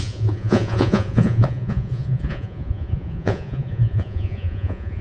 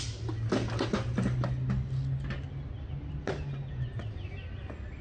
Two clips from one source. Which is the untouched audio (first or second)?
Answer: second